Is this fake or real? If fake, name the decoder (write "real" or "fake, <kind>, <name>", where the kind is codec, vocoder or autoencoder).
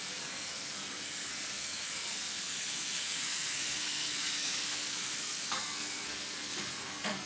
fake, codec, SNAC